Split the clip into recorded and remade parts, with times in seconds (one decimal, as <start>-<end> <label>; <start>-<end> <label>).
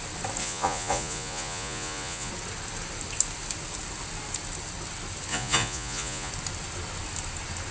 0.0-0.4 recorded; 0.4-2.3 remade; 2.3-5.3 recorded; 5.3-6.3 remade; 6.3-7.7 recorded